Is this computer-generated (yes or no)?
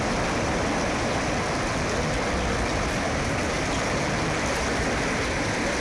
no